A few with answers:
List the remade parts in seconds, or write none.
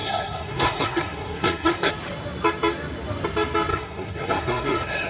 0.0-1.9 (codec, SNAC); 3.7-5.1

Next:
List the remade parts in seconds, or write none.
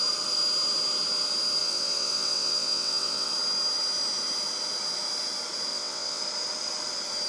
1.6-3.3 (vocoder, WaveNeXt); 5.7-6.2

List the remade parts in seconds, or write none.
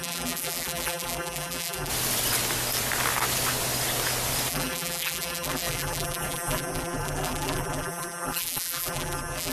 0.0-1.9 (vocoder, BigVGAN v2); 4.5-9.5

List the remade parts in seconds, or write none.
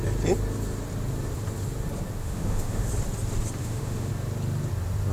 2.2-2.9 (autoencoder, DAC-VAE); 3.6-4.1